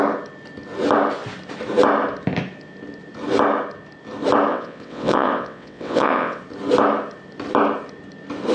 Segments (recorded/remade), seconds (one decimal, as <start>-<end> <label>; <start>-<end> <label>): 0.0-4.5 recorded; 4.5-6.4 remade; 6.4-8.5 recorded